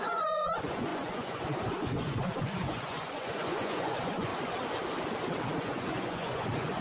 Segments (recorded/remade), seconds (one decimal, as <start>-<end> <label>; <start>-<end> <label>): 0.0-4.3 remade; 4.3-5.6 recorded; 5.6-6.8 remade